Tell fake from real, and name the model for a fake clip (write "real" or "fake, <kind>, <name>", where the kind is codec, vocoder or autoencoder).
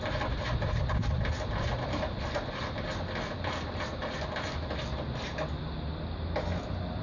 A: real